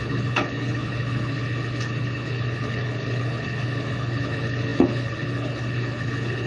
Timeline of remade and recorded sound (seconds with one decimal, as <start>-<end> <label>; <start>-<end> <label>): 0.0-6.5 remade